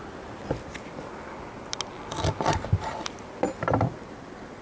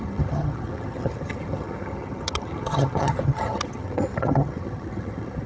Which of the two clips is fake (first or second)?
second